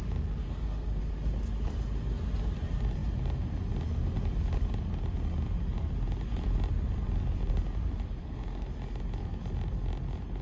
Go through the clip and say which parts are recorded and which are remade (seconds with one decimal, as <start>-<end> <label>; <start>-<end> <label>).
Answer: 0.0-0.4 recorded; 0.4-1.0 remade; 1.0-8.2 recorded; 8.2-8.7 remade; 8.7-10.4 recorded